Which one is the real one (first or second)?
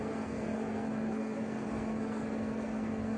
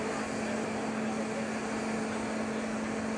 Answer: second